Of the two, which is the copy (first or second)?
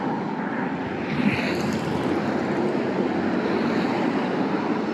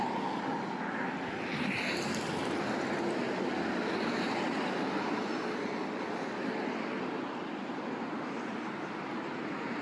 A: first